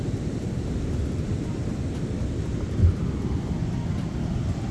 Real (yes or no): yes